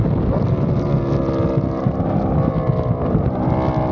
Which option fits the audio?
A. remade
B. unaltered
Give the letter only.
B